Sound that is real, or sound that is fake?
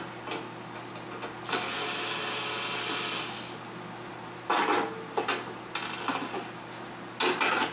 real